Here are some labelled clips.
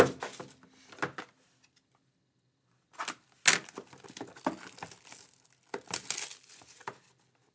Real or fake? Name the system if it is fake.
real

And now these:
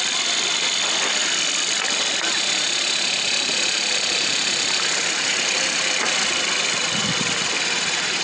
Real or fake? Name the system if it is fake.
real